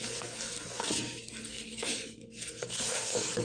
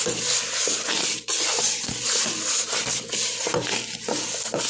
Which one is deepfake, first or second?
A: first